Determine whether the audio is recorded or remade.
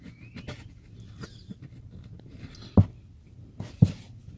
recorded